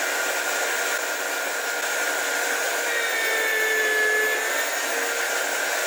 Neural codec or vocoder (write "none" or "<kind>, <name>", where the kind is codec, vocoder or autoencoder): none